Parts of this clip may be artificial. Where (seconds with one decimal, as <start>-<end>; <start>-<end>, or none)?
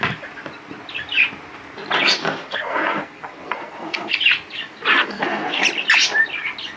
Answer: 2.2-4.1; 5.0-5.6